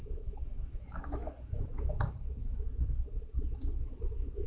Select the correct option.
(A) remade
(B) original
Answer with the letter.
A